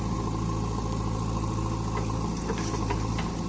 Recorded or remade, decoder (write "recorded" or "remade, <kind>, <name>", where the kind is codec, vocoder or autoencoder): recorded